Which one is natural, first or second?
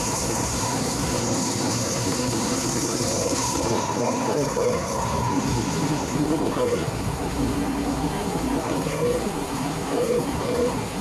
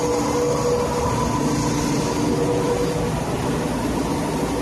second